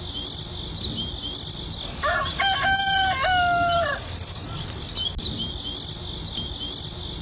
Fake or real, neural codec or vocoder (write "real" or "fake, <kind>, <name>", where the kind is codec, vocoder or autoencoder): real